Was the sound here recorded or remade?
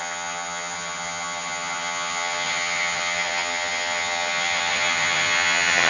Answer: remade